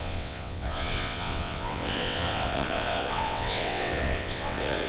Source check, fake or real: fake